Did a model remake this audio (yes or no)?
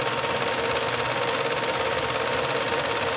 no